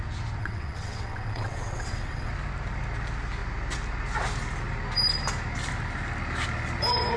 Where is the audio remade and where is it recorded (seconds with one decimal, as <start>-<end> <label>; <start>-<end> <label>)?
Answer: 0.0-0.4 recorded; 0.4-2.3 remade; 2.3-7.2 recorded